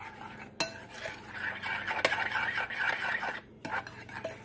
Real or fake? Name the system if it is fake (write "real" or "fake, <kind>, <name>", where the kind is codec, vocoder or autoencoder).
real